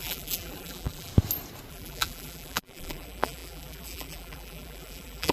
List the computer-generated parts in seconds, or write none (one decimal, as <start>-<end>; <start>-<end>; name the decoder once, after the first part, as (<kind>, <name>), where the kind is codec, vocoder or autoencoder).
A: 0.0-1.1 (vocoder, BigVGAN v2); 1.7-5.3